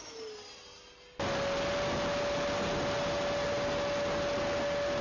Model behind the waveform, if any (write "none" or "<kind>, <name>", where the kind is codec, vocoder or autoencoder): none